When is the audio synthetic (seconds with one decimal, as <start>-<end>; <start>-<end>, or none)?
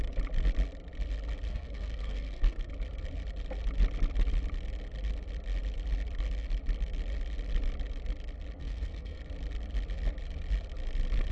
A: 1.5-2.7; 8.6-9.2